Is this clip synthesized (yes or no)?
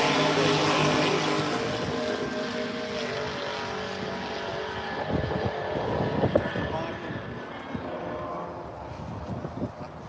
no